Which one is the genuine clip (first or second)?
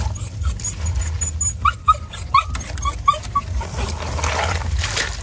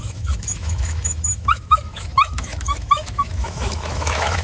first